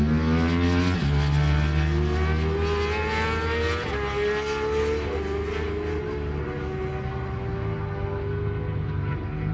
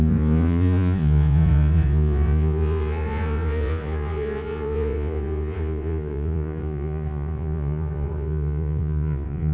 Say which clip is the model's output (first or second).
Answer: second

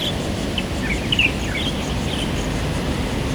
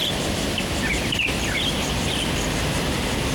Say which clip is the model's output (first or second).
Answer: second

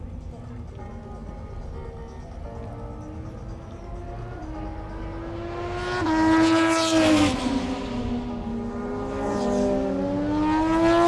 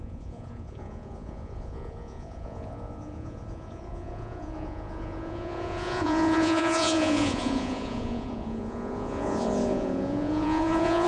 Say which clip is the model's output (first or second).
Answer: second